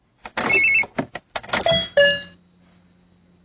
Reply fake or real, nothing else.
real